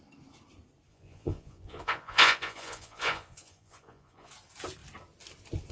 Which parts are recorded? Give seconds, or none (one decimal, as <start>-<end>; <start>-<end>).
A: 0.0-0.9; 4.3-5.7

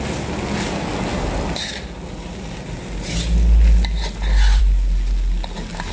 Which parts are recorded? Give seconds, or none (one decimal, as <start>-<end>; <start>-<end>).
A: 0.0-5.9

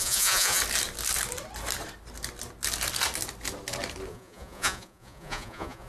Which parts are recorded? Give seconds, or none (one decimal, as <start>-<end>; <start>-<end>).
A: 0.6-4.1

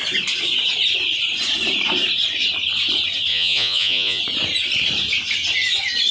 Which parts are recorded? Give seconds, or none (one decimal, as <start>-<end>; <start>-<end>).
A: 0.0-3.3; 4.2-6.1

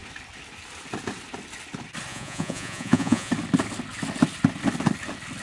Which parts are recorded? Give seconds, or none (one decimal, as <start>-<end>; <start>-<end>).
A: 0.0-2.1; 3.3-5.4

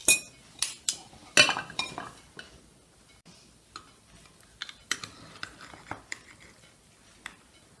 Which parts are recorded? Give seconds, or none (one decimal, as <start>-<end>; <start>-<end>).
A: 0.0-7.8